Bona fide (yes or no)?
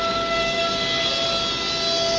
yes